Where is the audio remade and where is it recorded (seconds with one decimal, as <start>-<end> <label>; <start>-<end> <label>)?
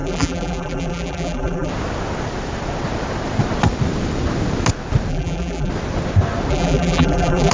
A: 0.0-1.7 remade; 1.7-5.1 recorded; 5.1-5.7 remade; 5.7-6.5 recorded; 6.5-7.5 remade